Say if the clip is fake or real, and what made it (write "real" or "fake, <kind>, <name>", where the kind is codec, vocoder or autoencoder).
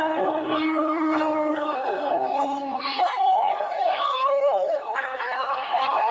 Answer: fake, codec, SNAC